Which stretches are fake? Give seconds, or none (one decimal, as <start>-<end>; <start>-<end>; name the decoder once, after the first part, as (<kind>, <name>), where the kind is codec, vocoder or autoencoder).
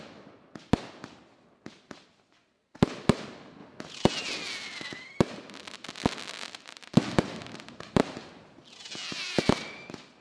none